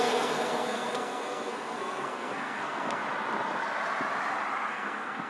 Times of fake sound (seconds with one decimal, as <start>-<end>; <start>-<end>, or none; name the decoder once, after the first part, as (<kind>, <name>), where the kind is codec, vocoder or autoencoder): 0.0-3.0 (codec, SNAC); 4.7-5.3